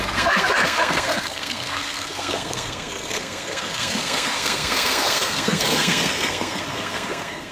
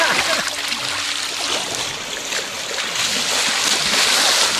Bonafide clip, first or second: second